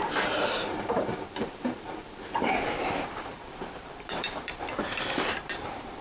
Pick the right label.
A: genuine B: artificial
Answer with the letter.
B